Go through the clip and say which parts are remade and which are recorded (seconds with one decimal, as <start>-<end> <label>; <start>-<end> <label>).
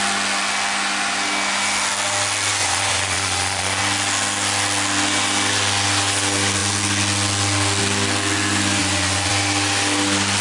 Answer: 0.0-2.6 recorded; 2.6-3.8 remade; 3.8-8.8 recorded; 8.8-9.3 remade; 9.3-10.4 recorded